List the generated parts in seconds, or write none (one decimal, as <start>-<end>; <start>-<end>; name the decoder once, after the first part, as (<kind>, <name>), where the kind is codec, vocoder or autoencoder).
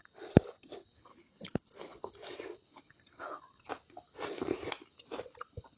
1.1-2.1 (codec, HILCodec)